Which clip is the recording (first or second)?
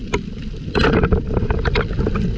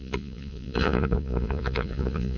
first